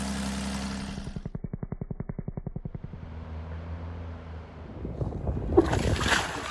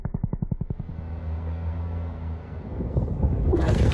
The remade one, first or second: second